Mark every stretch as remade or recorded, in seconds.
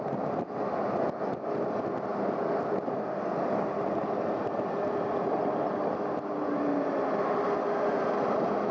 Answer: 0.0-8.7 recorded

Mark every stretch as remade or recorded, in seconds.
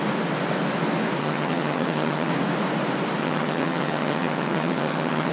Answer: 0.0-1.2 recorded; 1.2-2.3 remade; 2.3-3.2 recorded; 3.2-5.3 remade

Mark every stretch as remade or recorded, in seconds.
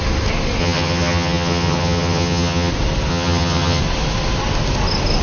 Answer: 0.0-0.6 recorded; 0.6-2.7 remade; 2.7-3.1 recorded; 3.1-3.8 remade; 3.8-5.2 recorded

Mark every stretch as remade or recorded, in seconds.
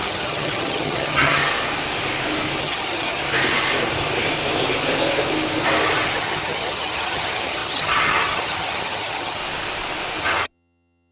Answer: 0.0-1.4 remade; 1.4-2.6 recorded; 2.6-3.2 remade; 3.2-6.2 recorded; 6.2-9.4 remade; 9.4-10.2 recorded; 10.2-11.1 remade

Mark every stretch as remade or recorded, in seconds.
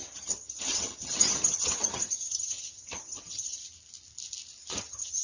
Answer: 0.0-3.6 remade; 3.6-4.8 recorded; 4.8-5.2 remade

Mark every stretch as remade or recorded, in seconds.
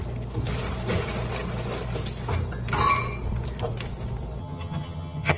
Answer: 0.0-4.4 recorded; 4.4-5.4 remade